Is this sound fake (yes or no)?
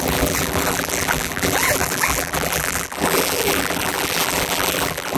yes